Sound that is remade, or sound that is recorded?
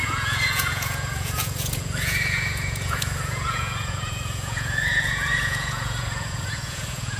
remade